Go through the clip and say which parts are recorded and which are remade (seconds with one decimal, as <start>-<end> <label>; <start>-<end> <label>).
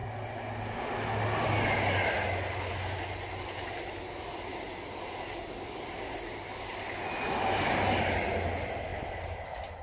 0.0-9.8 recorded